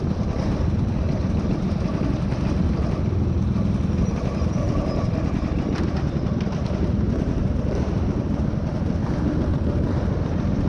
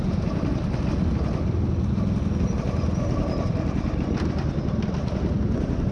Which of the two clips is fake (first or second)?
first